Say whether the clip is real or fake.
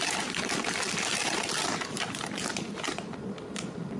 real